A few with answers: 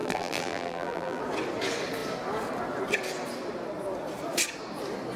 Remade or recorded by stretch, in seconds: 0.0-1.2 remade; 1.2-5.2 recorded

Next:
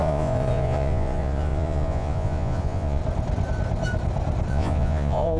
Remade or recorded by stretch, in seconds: 0.0-3.0 remade; 3.0-4.5 recorded; 4.5-5.4 remade

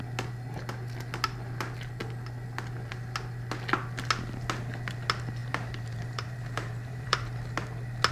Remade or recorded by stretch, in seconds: 0.0-5.4 recorded; 5.4-7.5 remade; 7.5-8.1 recorded

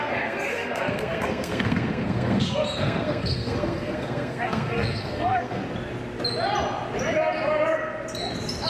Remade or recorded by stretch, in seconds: 0.0-5.6 remade; 5.6-8.7 recorded

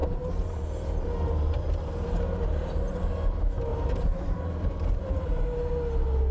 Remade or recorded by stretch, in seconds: 0.0-3.1 remade; 3.1-3.7 recorded; 3.7-5.7 remade; 5.7-6.3 recorded

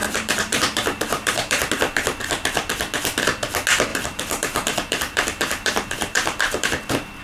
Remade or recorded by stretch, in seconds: 0.0-1.7 remade; 1.7-3.9 recorded; 3.9-7.2 remade